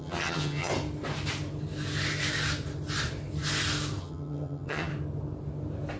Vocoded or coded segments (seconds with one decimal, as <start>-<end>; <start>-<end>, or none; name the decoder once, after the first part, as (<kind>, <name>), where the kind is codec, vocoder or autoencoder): 0.0-0.7 (vocoder, HiFi-GAN); 4.0-4.9